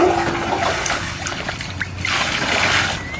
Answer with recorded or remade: recorded